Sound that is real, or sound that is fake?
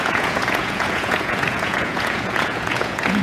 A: fake